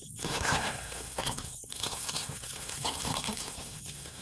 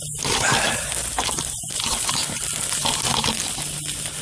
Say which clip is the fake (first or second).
first